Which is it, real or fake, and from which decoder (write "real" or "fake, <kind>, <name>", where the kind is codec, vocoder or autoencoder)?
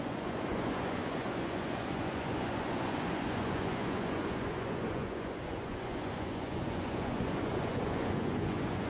fake, vocoder, Vocos